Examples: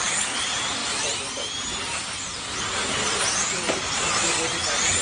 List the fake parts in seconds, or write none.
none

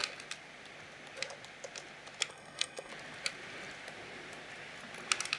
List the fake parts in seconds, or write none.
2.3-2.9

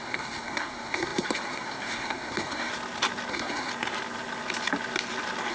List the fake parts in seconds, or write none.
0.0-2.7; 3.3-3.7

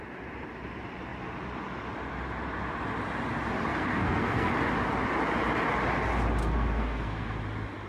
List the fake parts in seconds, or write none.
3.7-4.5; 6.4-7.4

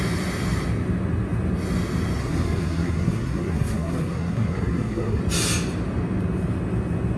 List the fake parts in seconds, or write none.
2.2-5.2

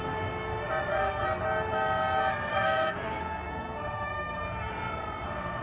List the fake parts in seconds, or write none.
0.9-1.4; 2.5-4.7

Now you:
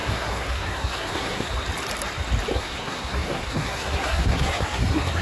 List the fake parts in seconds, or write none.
0.0-1.5; 2.5-5.2